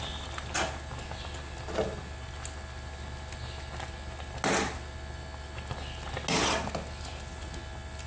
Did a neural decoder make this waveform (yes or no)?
no